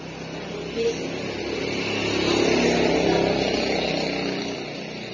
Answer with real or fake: real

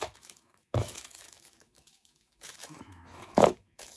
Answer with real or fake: fake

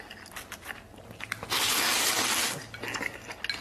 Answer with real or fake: real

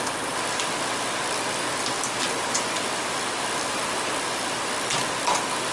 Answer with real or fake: real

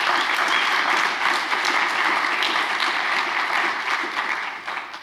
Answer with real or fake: real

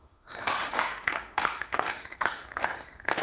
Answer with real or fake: fake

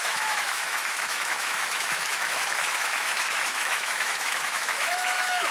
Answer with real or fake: fake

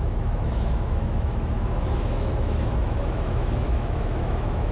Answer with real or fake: fake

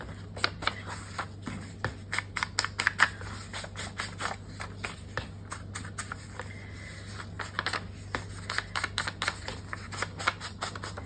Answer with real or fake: real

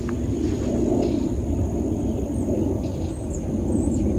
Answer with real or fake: real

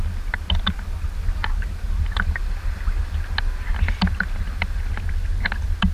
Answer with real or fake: real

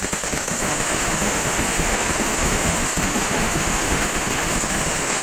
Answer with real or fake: fake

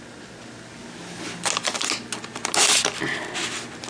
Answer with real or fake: real